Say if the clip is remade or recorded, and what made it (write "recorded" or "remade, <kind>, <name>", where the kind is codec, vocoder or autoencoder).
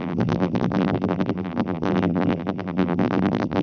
remade, vocoder, BigVGAN v2